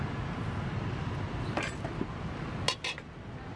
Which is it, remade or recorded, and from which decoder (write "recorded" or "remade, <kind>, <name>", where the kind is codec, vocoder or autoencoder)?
recorded